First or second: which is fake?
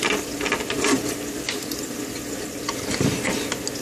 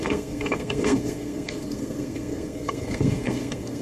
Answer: second